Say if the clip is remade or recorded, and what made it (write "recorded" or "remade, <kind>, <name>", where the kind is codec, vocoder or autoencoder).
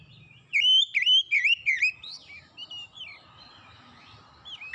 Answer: recorded